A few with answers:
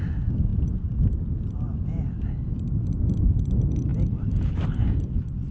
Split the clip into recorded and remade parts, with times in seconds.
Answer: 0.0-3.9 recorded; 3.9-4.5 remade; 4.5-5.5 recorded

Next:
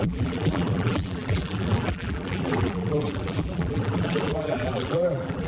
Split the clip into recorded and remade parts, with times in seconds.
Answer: 0.0-5.5 remade

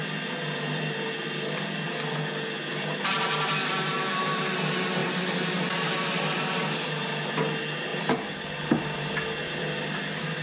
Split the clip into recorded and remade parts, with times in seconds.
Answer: 0.0-5.0 recorded; 5.0-5.6 remade; 5.6-7.9 recorded; 7.9-9.1 remade; 9.1-10.4 recorded

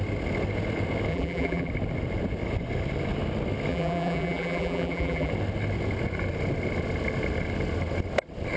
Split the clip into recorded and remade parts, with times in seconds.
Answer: 0.0-1.1 recorded; 1.1-1.7 remade; 1.7-3.7 recorded; 3.7-5.3 remade; 5.3-8.6 recorded

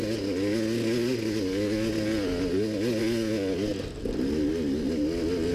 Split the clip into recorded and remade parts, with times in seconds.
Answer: 0.0-5.5 recorded

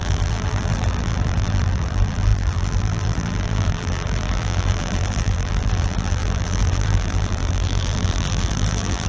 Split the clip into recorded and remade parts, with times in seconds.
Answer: 0.0-9.1 remade